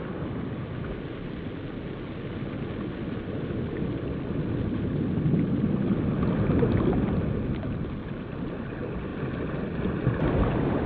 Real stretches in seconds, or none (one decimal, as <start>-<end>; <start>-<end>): 0.0-10.9